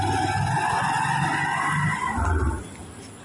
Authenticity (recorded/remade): recorded